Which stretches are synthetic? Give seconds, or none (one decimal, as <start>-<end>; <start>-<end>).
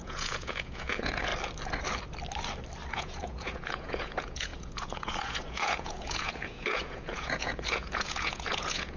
0.0-1.3; 2.9-9.0